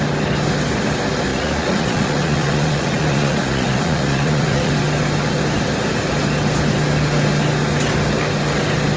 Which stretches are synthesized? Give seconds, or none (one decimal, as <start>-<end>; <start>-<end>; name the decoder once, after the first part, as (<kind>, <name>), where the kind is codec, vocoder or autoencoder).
1.3-4.7 (vocoder, Vocos)